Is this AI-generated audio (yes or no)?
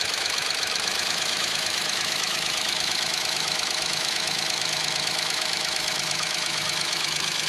yes